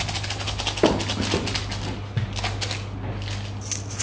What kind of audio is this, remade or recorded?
recorded